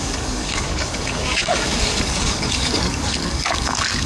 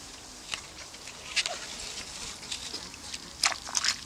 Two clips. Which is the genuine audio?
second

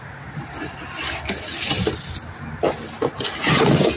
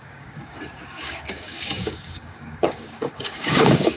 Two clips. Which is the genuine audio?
first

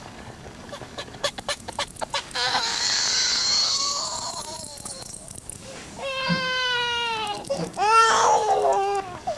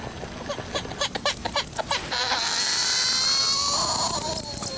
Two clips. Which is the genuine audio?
second